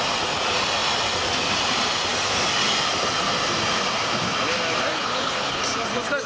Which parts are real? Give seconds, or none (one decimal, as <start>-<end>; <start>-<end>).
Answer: 0.0-4.9; 5.6-6.3